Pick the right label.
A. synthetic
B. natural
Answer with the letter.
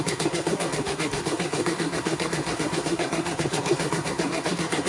A